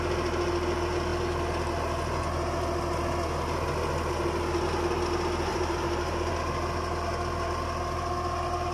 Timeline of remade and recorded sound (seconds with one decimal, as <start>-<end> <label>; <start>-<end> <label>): 0.0-5.5 recorded; 5.5-6.3 remade; 6.3-8.7 recorded